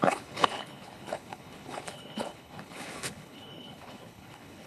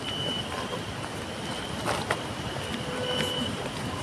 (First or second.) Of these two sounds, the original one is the second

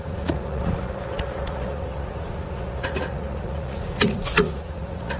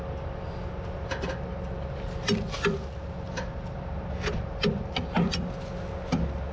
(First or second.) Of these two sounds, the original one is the second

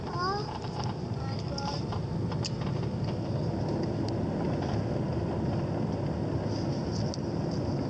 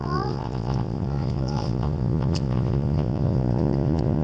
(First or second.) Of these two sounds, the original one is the first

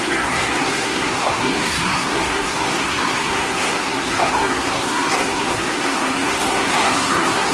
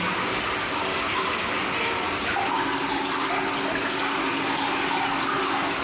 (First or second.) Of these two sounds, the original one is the second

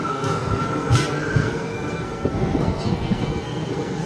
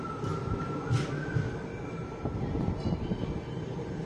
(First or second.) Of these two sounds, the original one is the second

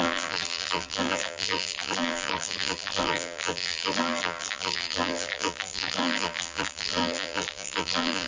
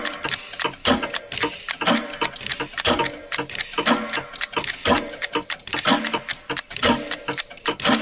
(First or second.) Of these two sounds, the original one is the second